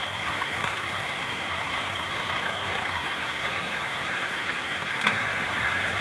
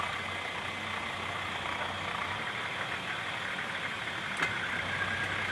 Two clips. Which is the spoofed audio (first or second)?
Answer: first